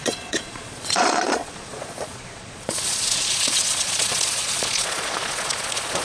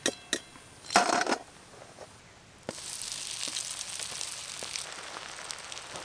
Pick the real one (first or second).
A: second